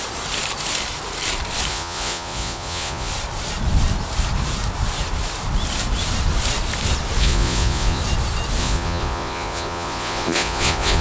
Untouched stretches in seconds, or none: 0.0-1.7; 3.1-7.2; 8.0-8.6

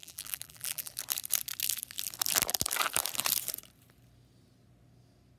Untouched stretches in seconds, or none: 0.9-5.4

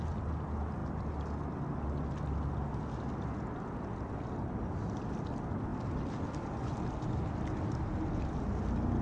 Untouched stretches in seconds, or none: 0.0-9.0